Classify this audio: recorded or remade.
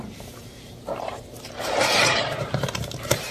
remade